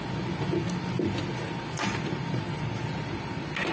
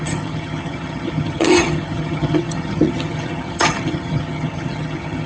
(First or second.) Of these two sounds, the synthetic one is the second